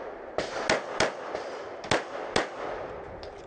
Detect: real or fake real